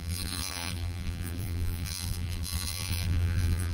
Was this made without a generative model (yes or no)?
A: no